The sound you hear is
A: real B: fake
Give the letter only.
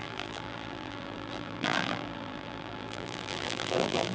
B